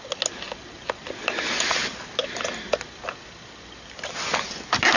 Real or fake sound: real